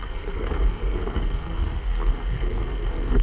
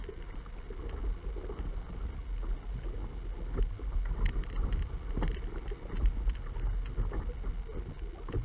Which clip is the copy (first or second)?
first